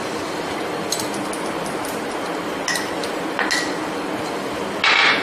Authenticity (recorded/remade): recorded